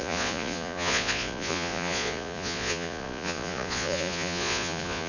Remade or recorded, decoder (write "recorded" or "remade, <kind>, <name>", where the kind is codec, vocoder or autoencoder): remade, vocoder, Vocos